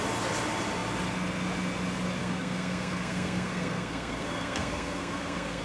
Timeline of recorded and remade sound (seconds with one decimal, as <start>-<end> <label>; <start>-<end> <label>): 0.0-2.2 recorded; 2.2-5.6 remade